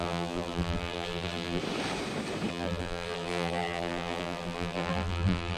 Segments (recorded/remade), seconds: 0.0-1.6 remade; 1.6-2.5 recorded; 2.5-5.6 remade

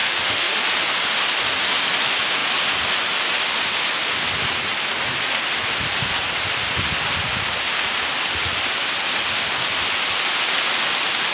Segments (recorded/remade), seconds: 0.0-0.6 remade; 0.6-11.3 recorded

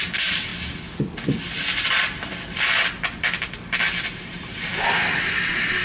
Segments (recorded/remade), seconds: 0.0-0.5 remade; 0.5-4.0 recorded; 4.0-4.7 remade; 4.7-5.8 recorded

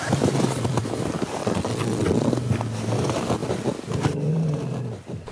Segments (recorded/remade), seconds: 0.0-1.4 recorded; 1.4-2.3 remade; 2.3-5.3 recorded

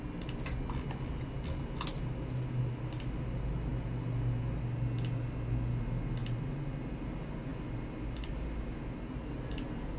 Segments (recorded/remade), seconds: 0.0-10.0 recorded

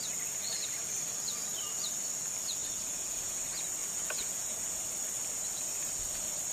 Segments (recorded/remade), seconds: 0.0-2.6 recorded; 2.6-3.4 remade; 3.4-3.8 recorded; 3.8-4.8 remade; 4.8-6.5 recorded

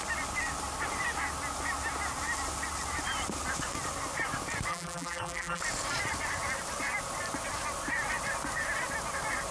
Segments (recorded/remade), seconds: 0.0-4.7 recorded; 4.7-5.6 remade; 5.6-9.5 recorded

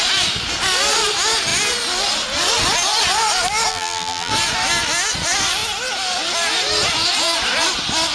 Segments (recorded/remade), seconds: 0.0-3.7 recorded; 3.7-4.3 remade; 4.3-8.1 recorded